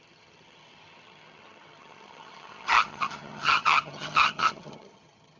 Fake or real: fake